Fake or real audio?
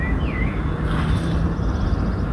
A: real